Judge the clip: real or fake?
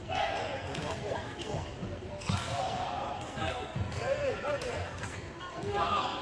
fake